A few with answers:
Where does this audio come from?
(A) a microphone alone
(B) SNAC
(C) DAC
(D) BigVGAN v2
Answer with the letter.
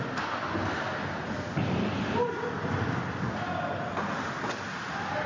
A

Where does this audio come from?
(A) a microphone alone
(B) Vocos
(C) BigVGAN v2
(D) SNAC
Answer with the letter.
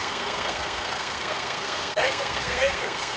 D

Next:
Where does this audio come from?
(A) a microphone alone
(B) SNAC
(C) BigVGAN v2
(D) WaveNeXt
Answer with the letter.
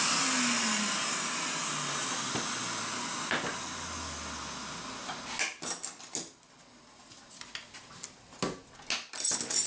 A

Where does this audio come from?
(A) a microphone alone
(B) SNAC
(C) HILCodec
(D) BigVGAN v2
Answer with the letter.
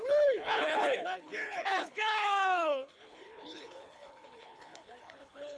C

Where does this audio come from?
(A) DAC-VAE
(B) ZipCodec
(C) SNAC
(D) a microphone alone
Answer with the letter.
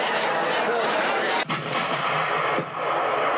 D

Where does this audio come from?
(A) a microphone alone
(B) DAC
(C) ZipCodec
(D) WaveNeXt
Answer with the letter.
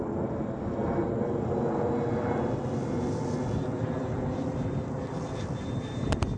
A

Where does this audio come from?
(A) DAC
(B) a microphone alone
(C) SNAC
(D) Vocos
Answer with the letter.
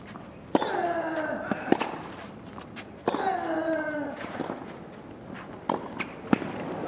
B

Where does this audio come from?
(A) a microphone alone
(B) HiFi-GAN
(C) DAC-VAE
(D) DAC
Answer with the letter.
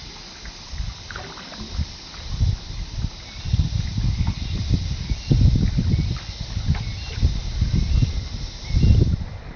A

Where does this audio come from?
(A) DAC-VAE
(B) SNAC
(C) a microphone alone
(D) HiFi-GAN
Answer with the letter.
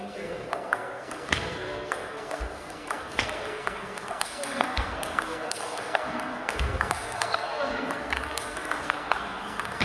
B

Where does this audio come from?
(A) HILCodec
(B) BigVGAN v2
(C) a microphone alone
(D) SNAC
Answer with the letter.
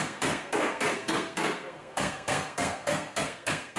D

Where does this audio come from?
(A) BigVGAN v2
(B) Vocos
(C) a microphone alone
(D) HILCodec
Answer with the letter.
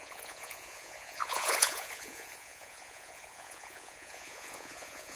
B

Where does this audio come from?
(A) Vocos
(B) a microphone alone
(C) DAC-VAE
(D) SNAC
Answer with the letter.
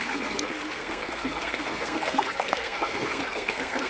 D